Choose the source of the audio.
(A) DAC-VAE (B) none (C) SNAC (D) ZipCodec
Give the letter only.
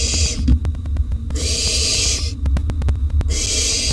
B